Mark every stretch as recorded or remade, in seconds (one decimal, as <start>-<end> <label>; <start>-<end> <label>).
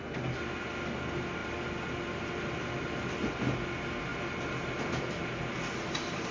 0.0-1.4 recorded; 1.4-2.3 remade; 2.3-6.3 recorded